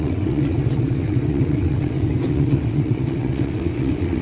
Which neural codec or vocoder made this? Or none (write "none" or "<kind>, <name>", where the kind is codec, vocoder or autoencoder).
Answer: vocoder, WaveNeXt